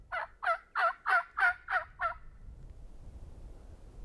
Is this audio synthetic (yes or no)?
no